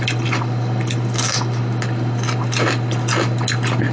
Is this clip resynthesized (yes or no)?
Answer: no